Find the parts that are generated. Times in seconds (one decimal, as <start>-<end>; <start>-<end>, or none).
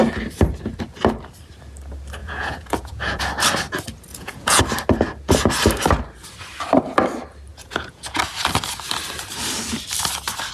2.2-3.2; 4.1-4.6; 7.5-8.2